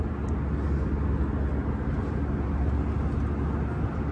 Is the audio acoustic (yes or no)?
yes